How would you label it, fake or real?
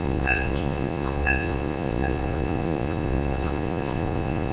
fake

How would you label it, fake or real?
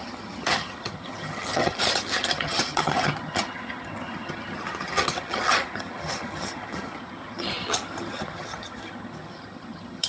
fake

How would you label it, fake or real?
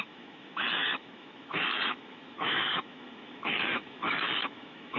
fake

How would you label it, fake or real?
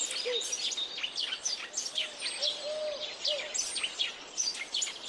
real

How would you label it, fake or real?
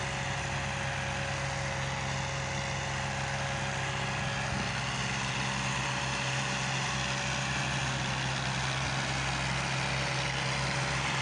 real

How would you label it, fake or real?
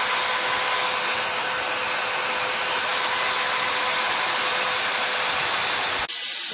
real